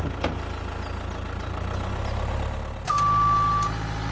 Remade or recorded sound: recorded